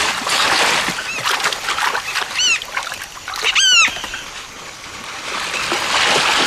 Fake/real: real